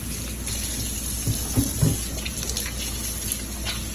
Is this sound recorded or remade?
recorded